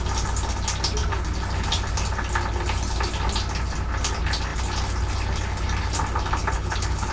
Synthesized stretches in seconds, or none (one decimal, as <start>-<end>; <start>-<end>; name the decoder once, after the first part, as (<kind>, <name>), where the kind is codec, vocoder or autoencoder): 6.4-7.1 (codec, HILCodec)